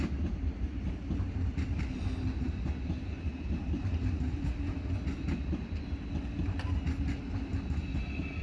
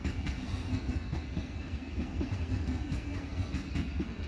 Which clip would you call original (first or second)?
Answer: first